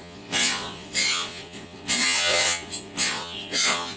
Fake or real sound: fake